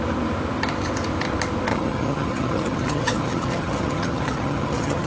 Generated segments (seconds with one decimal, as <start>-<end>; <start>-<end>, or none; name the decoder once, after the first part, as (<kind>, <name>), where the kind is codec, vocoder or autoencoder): 1.7-5.1 (vocoder, HiFi-GAN)